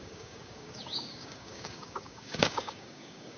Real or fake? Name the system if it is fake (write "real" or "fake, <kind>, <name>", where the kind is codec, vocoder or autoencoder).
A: fake, codec, DAC